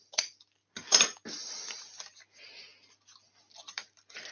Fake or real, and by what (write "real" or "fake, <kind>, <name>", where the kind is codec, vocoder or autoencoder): real